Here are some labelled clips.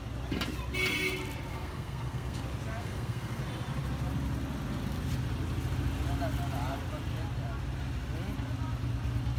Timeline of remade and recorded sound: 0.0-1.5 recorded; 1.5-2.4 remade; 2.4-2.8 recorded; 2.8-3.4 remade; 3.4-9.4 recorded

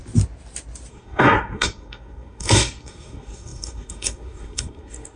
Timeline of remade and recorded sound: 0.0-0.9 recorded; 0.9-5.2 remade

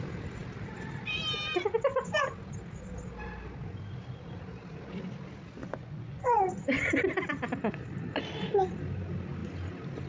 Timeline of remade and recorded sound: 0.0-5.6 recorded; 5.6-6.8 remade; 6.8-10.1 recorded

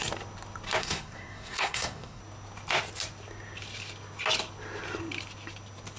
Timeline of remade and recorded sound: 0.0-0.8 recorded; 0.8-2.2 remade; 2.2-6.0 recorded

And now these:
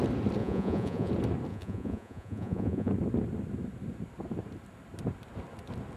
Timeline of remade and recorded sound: 0.0-0.4 recorded; 0.4-1.1 remade; 1.1-1.5 recorded; 1.5-2.9 remade; 2.9-6.0 recorded

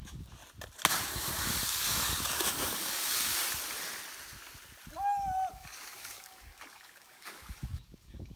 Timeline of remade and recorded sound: 0.0-0.4 remade; 0.4-0.9 recorded; 0.9-3.3 remade; 3.3-5.5 recorded; 5.5-8.4 remade